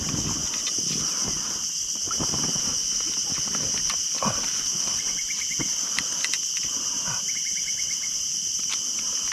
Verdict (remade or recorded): recorded